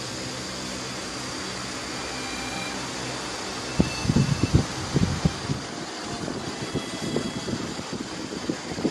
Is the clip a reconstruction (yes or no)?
no